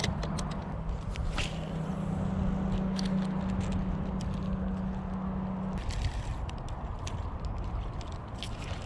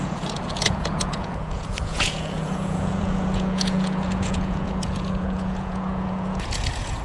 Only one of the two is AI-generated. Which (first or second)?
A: second